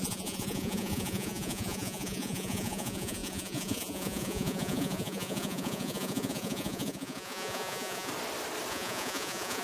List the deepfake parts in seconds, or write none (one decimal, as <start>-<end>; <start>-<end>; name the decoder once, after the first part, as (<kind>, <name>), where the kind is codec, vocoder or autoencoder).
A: 0.0-8.1 (vocoder, Vocos); 8.7-9.6